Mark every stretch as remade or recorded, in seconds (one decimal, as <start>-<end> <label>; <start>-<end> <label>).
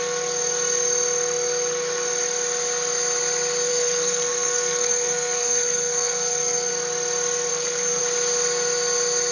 0.0-3.7 recorded; 3.7-6.7 remade; 6.7-7.5 recorded; 7.5-8.0 remade; 8.0-9.3 recorded